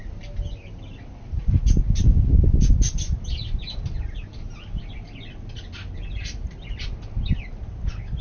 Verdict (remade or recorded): recorded